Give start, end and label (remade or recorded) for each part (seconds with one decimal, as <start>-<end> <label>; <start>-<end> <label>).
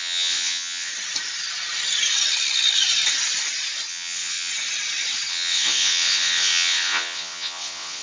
0.0-0.9 remade; 0.9-3.9 recorded; 3.9-4.5 remade; 4.5-5.3 recorded; 5.3-8.0 remade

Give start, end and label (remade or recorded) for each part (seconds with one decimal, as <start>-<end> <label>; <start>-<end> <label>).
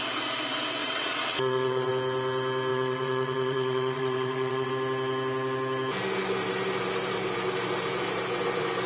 0.0-0.8 recorded; 0.8-1.9 remade; 1.9-2.7 recorded; 2.7-4.7 remade; 4.7-8.9 recorded